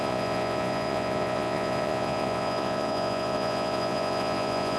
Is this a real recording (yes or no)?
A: no